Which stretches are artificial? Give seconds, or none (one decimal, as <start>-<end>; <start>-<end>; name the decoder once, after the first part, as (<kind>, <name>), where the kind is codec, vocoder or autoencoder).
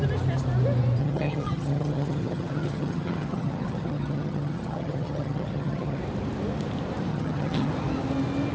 1.0-6.0 (vocoder, HiFi-GAN); 7.1-7.7